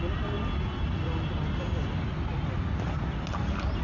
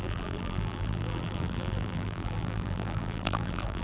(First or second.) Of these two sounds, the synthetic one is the second